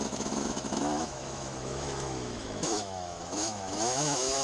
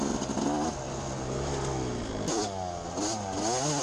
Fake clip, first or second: first